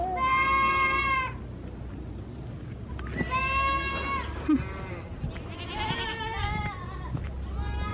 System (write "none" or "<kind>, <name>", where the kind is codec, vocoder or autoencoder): none